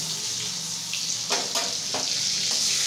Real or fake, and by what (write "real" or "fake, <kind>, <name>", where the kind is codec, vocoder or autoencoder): real